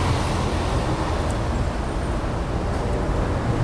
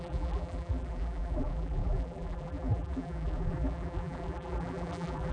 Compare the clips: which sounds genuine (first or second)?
first